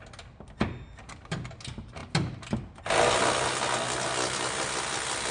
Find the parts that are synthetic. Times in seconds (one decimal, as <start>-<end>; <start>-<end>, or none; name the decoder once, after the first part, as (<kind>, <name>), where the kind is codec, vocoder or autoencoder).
none